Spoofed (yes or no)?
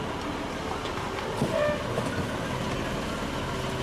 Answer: no